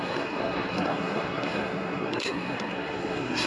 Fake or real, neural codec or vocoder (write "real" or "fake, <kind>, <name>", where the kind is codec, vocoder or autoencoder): fake, codec, SNAC